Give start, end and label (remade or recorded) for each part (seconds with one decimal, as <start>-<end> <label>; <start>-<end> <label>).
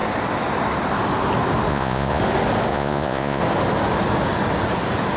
0.0-1.7 recorded; 1.7-2.2 remade; 2.2-2.7 recorded; 2.7-3.4 remade; 3.4-5.2 recorded